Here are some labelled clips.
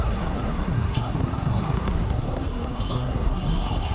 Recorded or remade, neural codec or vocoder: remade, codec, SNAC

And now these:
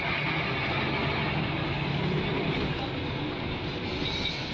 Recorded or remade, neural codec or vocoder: recorded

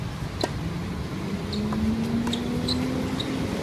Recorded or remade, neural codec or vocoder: recorded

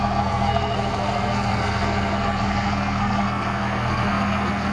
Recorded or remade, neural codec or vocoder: remade, codec, SNAC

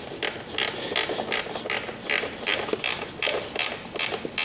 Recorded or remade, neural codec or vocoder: recorded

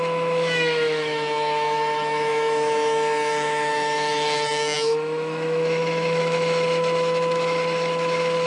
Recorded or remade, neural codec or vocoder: remade, autoencoder, DAC-VAE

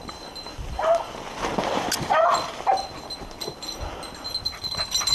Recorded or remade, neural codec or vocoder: recorded